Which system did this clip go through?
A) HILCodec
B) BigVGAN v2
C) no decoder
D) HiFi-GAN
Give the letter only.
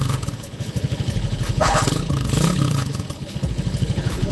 A